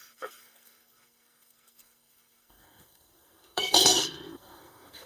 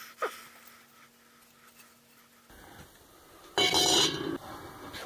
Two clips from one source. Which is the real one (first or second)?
second